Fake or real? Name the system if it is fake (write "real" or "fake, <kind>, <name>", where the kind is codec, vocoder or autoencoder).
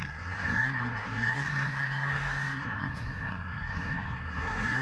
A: fake, codec, SNAC